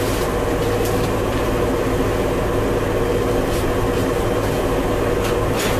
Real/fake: real